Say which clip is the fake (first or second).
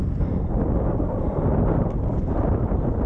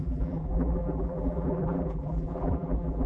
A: second